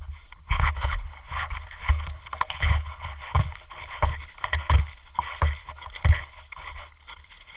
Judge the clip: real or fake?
fake